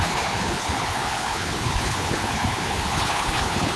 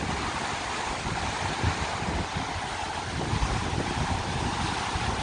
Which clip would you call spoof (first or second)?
first